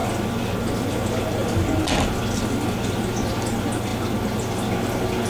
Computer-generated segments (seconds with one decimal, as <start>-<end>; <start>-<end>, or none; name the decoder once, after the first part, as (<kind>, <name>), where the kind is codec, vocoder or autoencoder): none